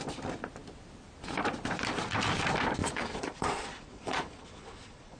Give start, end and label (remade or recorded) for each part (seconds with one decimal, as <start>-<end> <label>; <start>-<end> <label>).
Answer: 0.0-2.8 recorded; 2.8-5.2 remade